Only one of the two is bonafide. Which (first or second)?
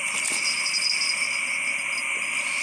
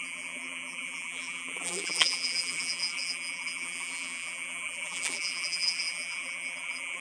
first